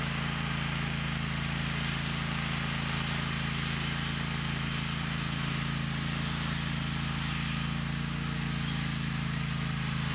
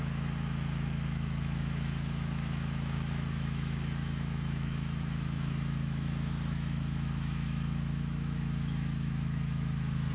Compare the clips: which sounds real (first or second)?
first